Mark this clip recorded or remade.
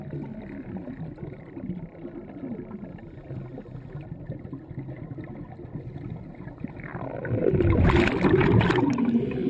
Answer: recorded